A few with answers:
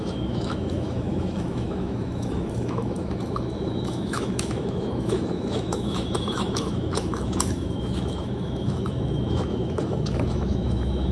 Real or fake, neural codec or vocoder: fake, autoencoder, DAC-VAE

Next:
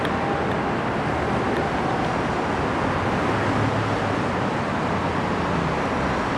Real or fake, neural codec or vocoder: real